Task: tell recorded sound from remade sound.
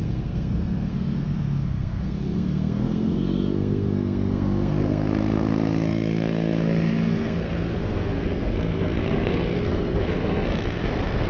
remade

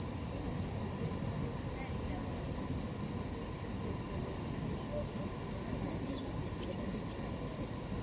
recorded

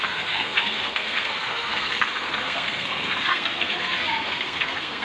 remade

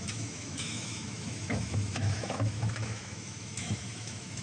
remade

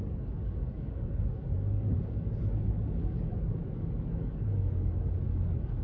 remade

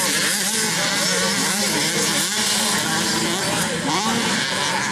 recorded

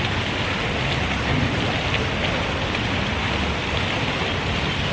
recorded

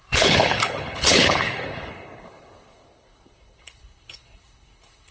remade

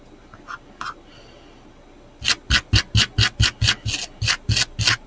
recorded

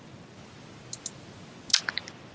recorded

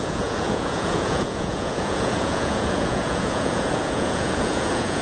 remade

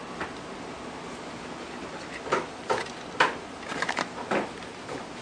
recorded